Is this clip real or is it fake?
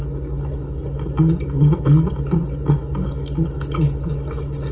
real